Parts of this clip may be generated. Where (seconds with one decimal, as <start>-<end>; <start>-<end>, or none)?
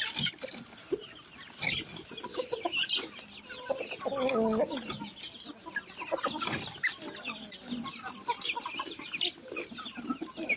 2.3-2.9